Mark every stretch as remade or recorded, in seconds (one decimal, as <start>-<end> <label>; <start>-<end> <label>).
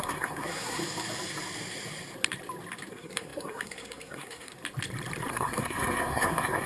0.0-0.8 remade; 0.8-2.9 recorded; 2.9-4.5 remade; 4.5-5.3 recorded; 5.3-6.7 remade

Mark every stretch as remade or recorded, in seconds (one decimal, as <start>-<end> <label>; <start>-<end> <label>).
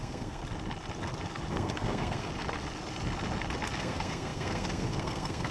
0.0-0.4 remade; 0.4-1.5 recorded; 1.5-2.3 remade; 2.3-3.8 recorded; 3.8-5.5 remade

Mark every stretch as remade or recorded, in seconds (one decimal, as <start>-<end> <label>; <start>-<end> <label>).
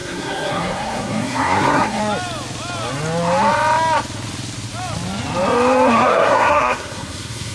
0.0-2.0 remade; 2.0-5.9 recorded; 5.9-7.5 remade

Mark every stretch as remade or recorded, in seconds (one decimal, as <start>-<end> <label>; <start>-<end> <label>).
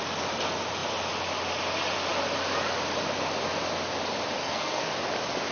0.0-4.4 recorded; 4.4-4.9 remade; 4.9-5.5 recorded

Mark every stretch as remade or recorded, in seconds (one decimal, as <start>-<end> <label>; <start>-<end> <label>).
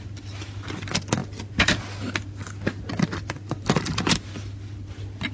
0.0-5.3 recorded